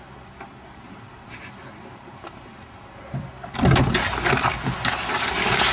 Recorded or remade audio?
recorded